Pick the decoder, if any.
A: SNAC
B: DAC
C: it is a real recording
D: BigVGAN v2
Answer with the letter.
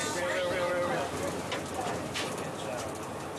C